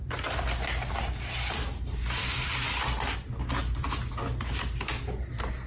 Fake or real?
real